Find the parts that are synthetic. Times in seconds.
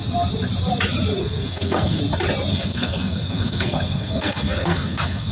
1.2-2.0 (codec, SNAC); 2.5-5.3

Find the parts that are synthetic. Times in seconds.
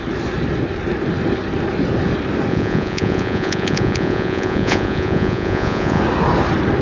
2.5-6.0 (vocoder, Vocos)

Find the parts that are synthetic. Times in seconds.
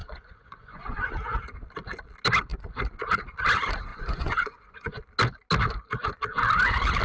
0.0-1.1 (vocoder, Vocos); 3.9-5.0